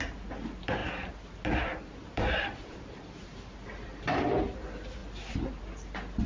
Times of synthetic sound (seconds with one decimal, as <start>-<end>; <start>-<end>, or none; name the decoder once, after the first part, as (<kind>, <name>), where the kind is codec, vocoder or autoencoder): 2.0-4.4 (vocoder, BigVGAN v2)